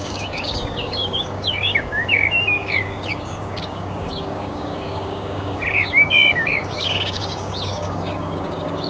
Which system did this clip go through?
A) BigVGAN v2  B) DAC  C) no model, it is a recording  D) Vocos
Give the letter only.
B